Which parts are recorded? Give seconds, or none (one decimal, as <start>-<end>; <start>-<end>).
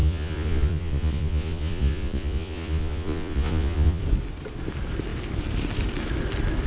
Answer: 4.0-6.7